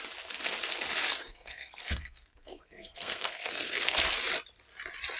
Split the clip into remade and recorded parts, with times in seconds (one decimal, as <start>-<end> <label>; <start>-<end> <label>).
0.0-1.2 recorded; 1.2-4.0 remade; 4.0-5.2 recorded